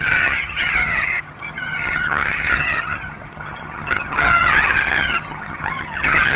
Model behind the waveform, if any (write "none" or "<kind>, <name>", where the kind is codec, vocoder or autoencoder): vocoder, HiFi-GAN